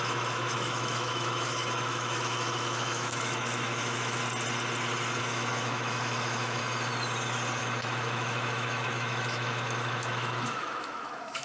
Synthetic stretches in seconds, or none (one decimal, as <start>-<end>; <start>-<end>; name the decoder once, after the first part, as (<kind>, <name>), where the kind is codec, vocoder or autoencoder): 0.0-4.2 (autoencoder, DAC-VAE); 5.2-6.6; 7.6-11.4